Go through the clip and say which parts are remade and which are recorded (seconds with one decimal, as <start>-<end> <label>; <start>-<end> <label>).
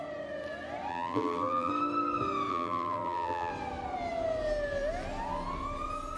0.0-0.9 recorded; 0.9-1.7 remade; 1.7-2.5 recorded; 2.5-3.5 remade; 3.5-6.2 recorded